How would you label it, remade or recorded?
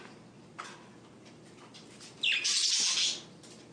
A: recorded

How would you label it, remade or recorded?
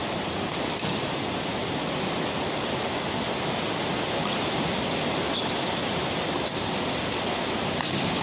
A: recorded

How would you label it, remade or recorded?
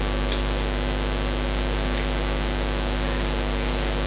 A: recorded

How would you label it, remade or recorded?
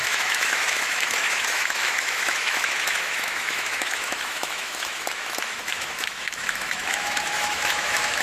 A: remade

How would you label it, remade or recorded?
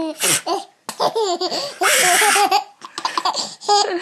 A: recorded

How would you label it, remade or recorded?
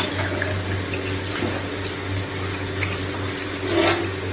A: recorded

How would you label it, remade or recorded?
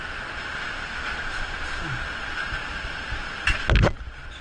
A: recorded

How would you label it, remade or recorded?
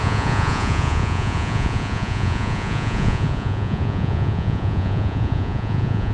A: remade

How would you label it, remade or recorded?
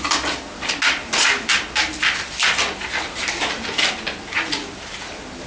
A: recorded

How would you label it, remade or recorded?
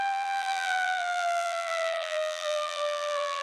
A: remade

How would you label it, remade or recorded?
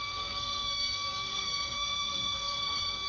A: remade